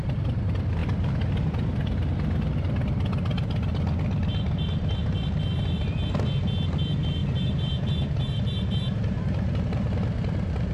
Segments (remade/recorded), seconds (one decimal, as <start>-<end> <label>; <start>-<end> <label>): 0.0-7.2 recorded; 7.2-9.6 remade; 9.6-10.7 recorded